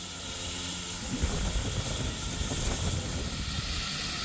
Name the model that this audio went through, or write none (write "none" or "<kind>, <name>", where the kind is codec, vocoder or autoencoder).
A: none